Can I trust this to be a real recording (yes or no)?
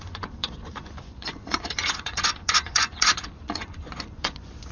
no